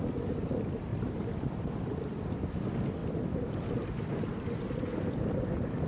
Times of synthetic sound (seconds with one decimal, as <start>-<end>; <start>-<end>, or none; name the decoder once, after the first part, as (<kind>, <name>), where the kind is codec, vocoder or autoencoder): 0.9-2.4 (vocoder, BigVGAN v2); 3.0-5.3